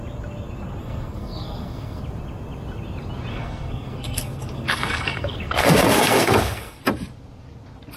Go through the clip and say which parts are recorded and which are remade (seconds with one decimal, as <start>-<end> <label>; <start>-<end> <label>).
0.0-0.8 recorded; 0.8-2.0 remade; 2.0-3.3 recorded; 3.3-6.8 remade; 6.8-8.0 recorded